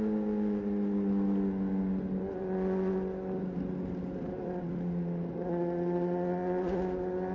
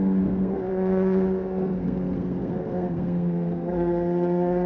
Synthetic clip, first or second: second